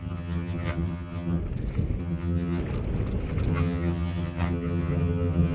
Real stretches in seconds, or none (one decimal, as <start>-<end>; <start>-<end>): 1.4-2.0; 2.6-3.5